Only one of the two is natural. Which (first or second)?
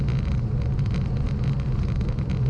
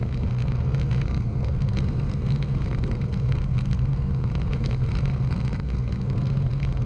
first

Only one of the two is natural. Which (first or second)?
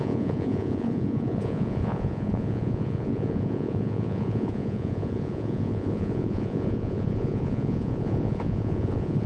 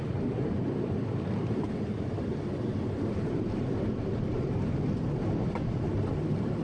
second